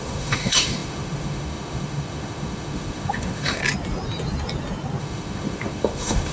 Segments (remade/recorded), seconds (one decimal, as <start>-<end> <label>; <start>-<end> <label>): 0.0-3.6 remade; 3.6-5.0 recorded; 5.0-6.3 remade